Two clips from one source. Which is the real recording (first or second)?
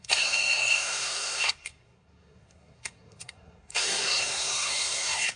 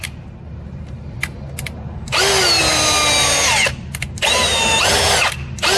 second